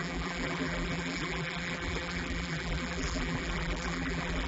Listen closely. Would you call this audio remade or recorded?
remade